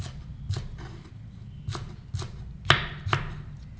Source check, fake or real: real